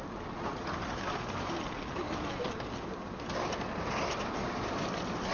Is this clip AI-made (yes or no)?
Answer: no